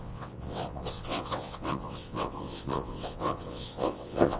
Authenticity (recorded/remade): remade